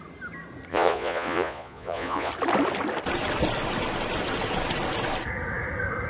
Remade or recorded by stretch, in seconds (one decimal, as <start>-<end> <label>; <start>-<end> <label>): 0.0-0.7 recorded; 0.7-2.3 remade; 2.3-6.1 recorded